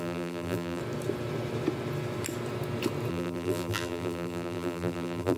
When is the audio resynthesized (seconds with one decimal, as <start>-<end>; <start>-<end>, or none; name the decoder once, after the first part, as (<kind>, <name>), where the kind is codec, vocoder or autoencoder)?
0.0-0.8 (vocoder, BigVGAN v2); 3.1-5.4